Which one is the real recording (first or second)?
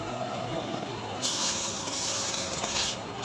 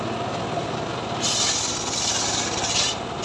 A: second